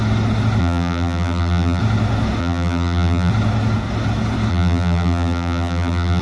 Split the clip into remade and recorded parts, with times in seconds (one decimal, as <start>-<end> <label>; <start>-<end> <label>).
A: 0.0-0.6 recorded; 0.6-1.8 remade; 1.8-2.4 recorded; 2.4-3.3 remade; 3.3-4.5 recorded; 4.5-6.2 remade